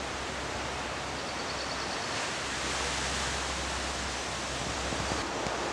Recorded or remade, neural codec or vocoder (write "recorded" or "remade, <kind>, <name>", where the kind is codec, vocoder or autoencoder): recorded